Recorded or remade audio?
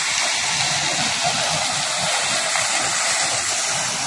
recorded